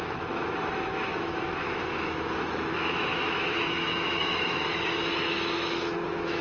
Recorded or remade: remade